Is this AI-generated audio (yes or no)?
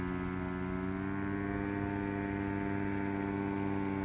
no